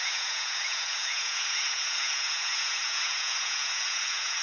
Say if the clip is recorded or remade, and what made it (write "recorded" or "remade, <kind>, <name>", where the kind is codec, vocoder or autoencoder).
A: remade, vocoder, Vocos